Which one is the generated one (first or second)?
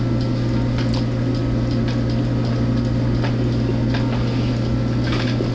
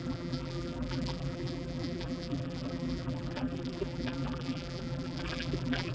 second